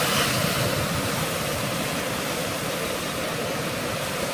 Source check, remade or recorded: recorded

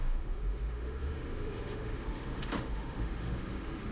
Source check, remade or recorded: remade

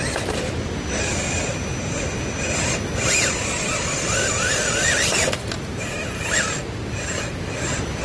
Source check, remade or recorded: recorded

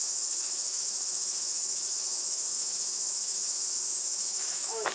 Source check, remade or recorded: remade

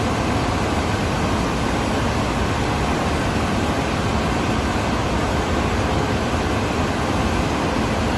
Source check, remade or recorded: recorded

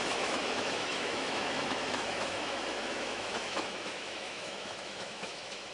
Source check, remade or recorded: remade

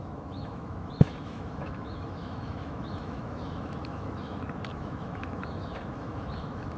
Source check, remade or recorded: remade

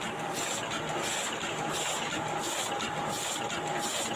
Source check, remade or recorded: recorded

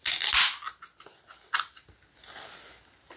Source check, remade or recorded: recorded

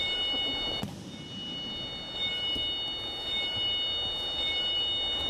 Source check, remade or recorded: recorded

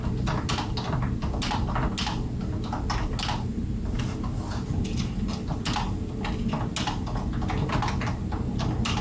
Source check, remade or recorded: recorded